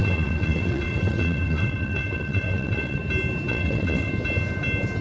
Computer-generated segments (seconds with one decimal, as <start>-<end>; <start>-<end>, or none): 0.0-3.0; 3.5-4.1